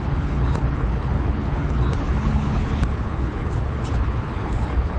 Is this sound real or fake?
fake